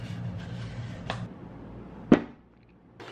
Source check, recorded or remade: recorded